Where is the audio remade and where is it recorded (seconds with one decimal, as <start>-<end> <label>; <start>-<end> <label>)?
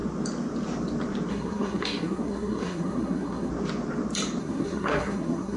0.0-1.3 recorded; 1.3-3.5 remade; 3.5-4.4 recorded; 4.4-5.6 remade